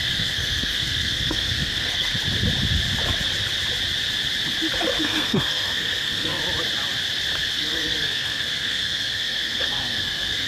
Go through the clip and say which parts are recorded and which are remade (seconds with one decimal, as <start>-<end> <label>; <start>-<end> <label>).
0.0-2.1 remade; 2.1-5.0 recorded; 5.0-6.4 remade; 6.4-7.5 recorded; 7.5-10.5 remade